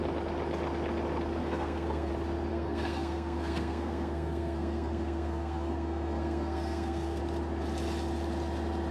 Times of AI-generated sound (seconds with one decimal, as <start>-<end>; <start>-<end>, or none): 1.4-2.1; 2.5-7.2